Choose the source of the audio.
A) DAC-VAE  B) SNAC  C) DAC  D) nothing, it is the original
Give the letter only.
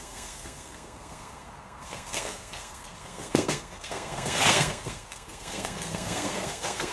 B